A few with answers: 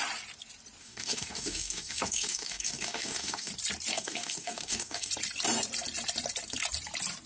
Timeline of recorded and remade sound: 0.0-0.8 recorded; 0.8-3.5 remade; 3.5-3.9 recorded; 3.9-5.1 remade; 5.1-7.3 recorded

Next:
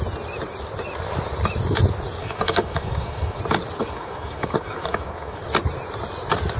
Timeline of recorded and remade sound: 0.0-2.2 recorded; 2.2-3.4 remade; 3.4-3.8 recorded; 3.8-5.4 remade; 5.4-6.6 recorded

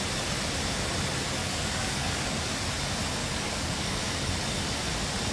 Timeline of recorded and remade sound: 0.0-1.4 recorded; 1.4-2.5 remade; 2.5-3.2 recorded; 3.2-4.3 remade; 4.3-5.3 recorded

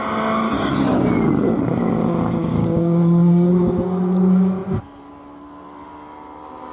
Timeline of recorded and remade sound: 0.0-2.5 recorded; 2.5-3.7 remade; 3.7-6.7 recorded

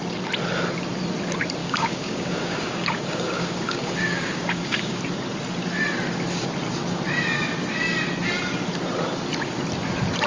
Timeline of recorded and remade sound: 0.0-1.6 recorded; 1.6-5.0 remade; 5.0-10.3 recorded